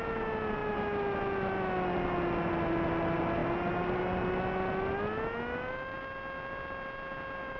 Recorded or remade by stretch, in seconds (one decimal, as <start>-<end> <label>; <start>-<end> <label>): 0.0-7.6 recorded